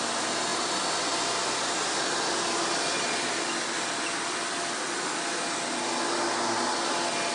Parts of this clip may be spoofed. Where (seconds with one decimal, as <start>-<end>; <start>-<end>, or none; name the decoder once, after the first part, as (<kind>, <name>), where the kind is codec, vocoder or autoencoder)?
none